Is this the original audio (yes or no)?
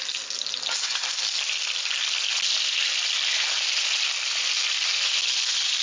yes